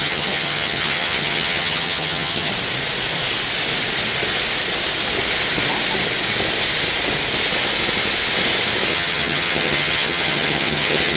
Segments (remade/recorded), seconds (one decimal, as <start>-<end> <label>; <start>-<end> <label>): 0.0-2.5 remade; 2.5-8.9 recorded; 8.9-11.2 remade